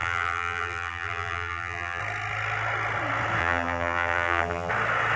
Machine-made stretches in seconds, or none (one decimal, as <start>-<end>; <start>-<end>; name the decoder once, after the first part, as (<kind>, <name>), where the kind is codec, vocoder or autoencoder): 0.0-2.0 (vocoder, BigVGAN v2); 3.4-4.7